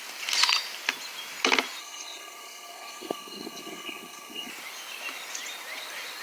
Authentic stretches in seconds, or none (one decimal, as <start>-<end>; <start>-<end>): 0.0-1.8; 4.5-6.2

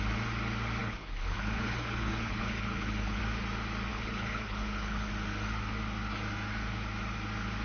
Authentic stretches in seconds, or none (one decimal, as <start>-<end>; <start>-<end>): 0.0-0.8; 3.2-3.9; 5.1-7.6

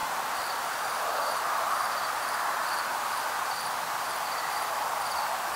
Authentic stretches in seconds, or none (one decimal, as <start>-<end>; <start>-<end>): 3.2-4.1; 5.0-5.6

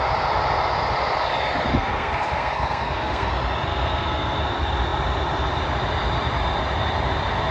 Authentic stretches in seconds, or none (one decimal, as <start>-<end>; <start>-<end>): 0.0-1.7; 3.3-3.7; 4.4-7.5